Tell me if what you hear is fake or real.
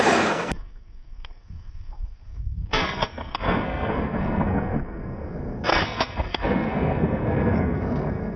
fake